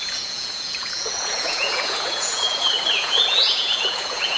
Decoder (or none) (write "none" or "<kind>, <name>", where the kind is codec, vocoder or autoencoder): vocoder, Vocos